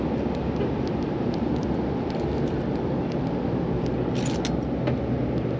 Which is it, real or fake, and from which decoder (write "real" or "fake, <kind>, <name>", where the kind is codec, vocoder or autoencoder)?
real